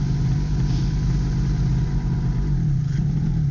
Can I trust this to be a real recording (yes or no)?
yes